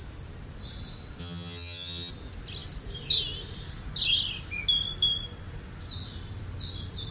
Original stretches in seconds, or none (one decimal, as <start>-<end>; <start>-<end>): 0.0-1.2; 2.1-7.1